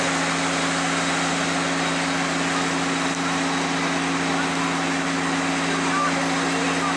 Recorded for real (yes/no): yes